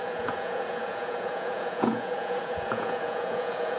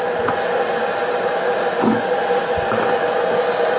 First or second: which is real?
second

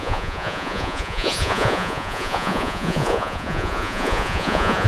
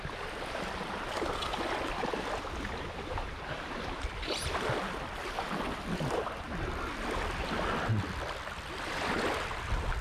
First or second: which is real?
second